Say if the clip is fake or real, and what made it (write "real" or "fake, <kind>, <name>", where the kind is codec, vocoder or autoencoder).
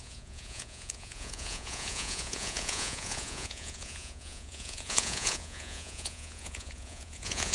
fake, vocoder, Vocos